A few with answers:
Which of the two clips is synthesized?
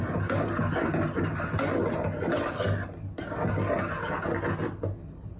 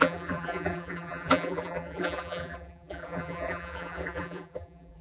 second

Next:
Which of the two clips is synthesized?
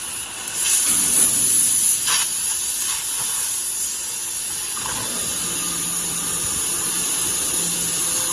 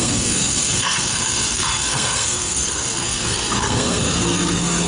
second